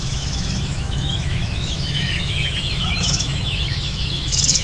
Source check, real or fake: fake